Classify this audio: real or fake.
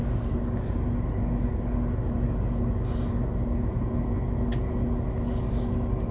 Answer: real